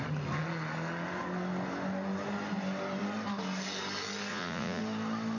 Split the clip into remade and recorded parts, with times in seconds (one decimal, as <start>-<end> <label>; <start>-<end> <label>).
0.0-4.3 recorded; 4.3-4.8 remade; 4.8-5.4 recorded